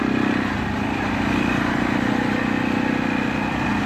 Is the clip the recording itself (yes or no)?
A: yes